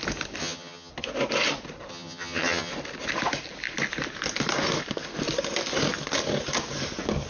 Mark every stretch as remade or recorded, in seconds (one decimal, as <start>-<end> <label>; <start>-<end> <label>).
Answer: 0.0-0.4 recorded; 0.4-0.9 remade; 0.9-1.9 recorded; 1.9-2.7 remade; 2.7-7.3 recorded